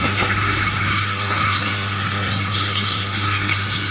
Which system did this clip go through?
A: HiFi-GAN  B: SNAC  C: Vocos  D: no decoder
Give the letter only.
B